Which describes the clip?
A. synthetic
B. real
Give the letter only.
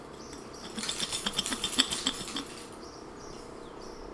B